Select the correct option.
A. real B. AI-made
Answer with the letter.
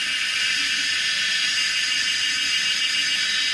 A